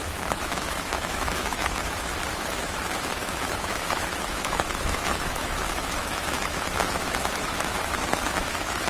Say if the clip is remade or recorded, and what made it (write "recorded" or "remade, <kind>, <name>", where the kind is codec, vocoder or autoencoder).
remade, autoencoder, DAC-VAE